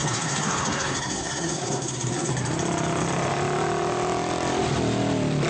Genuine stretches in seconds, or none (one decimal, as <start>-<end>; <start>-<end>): 2.3-5.5